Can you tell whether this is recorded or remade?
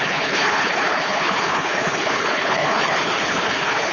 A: remade